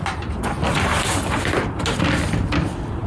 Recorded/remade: recorded